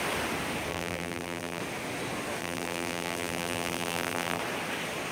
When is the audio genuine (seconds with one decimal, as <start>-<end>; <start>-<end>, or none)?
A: 0.0-0.7; 1.6-2.4; 4.4-5.1